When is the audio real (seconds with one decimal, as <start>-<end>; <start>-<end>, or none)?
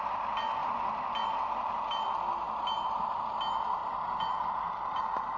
0.0-5.4